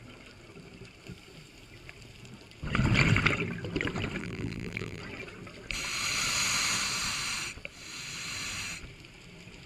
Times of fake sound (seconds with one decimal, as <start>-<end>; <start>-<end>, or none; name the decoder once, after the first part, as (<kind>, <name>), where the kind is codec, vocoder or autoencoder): 4.2-5.0 (vocoder, BigVGAN v2)

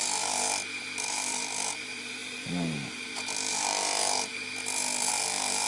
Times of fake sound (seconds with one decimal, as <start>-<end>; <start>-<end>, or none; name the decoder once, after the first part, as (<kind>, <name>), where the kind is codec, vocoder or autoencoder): 0.0-5.7 (vocoder, BigVGAN v2)